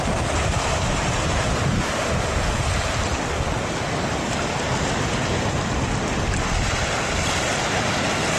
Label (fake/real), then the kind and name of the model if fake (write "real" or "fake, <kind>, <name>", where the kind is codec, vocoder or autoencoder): real